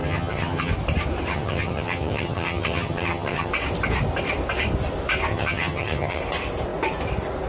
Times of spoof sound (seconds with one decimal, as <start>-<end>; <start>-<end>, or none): 0.0-0.7; 1.3-3.5; 5.3-6.2